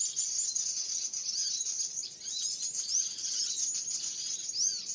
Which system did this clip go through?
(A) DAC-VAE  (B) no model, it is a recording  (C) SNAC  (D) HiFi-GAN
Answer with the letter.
B